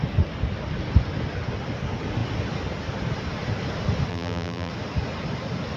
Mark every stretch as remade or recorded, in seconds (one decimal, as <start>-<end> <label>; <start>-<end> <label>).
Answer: 0.0-4.1 recorded; 4.1-4.7 remade; 4.7-5.8 recorded

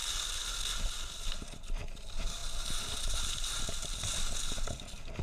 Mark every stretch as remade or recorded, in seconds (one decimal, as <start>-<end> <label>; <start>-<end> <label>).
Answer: 0.0-5.2 recorded

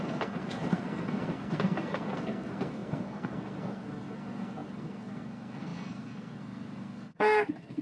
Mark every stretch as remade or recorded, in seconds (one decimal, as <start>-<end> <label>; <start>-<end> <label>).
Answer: 0.0-7.8 remade

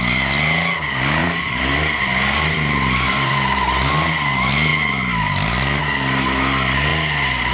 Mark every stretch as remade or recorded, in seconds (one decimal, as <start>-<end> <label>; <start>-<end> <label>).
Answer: 0.0-1.2 recorded; 1.2-4.1 remade; 4.1-7.5 recorded

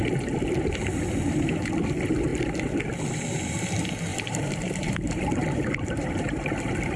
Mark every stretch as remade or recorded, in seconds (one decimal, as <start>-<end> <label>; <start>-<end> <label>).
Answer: 0.0-4.1 recorded; 4.1-6.6 remade; 6.6-7.0 recorded

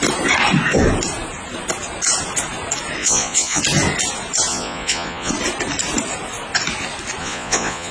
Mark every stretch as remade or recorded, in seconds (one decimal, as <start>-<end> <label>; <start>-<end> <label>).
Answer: 0.0-3.0 recorded; 3.0-3.6 remade; 3.6-4.5 recorded; 4.5-5.3 remade; 5.3-7.2 recorded; 7.2-7.9 remade

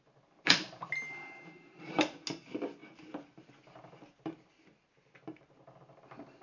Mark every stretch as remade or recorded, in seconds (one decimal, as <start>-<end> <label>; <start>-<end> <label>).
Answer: 0.0-6.4 recorded